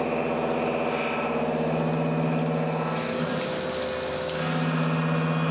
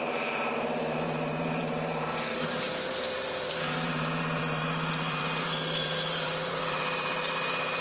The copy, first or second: second